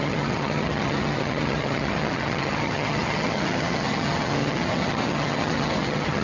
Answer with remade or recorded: remade